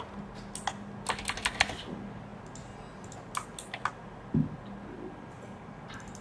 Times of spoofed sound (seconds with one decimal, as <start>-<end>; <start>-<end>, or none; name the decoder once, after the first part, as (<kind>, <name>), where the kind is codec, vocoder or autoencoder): none